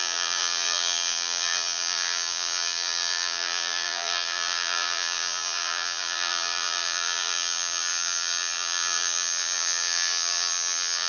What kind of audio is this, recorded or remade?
remade